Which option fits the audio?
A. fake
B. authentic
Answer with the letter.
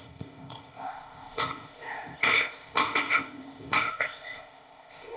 A